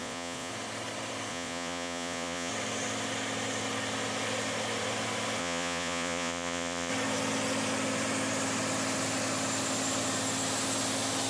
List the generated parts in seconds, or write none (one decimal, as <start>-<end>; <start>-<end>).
0.0-0.5; 1.3-2.5; 5.4-6.9